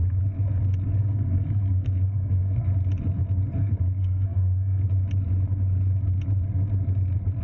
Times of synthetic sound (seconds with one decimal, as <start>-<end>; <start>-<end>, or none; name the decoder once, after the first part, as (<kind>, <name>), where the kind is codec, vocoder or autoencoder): 1.0-2.7 (codec, SNAC); 3.6-4.9